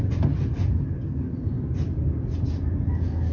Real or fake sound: real